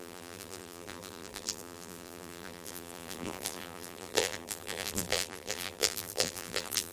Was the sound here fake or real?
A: fake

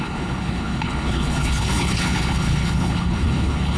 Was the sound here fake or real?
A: fake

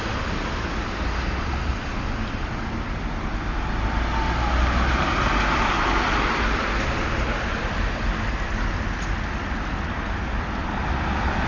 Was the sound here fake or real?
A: real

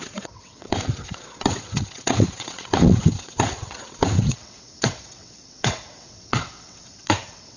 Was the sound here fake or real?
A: fake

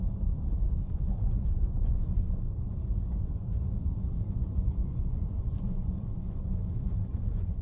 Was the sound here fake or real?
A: fake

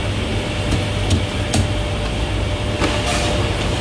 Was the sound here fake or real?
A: real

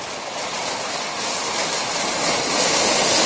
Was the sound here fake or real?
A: real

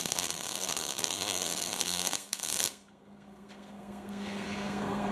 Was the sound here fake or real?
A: fake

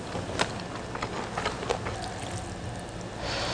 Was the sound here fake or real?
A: real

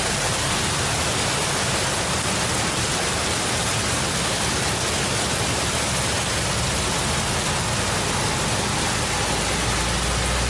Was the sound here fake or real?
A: real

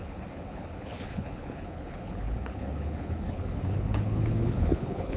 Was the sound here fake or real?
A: fake